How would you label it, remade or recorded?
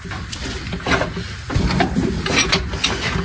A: recorded